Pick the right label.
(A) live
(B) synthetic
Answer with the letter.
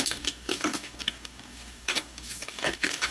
B